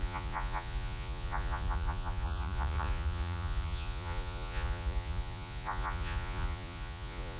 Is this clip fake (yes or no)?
yes